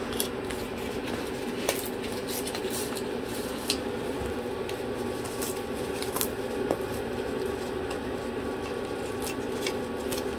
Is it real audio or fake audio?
real